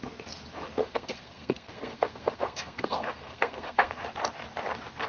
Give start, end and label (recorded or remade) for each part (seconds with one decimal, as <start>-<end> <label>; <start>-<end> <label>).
0.0-0.8 recorded; 0.8-3.9 remade; 3.9-5.1 recorded